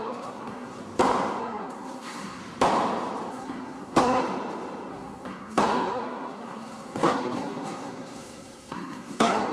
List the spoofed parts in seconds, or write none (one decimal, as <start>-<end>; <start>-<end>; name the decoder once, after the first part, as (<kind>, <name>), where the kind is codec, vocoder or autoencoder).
0.0-0.8 (codec, SNAC); 1.4-2.4; 3.3-4.2; 4.9-9.5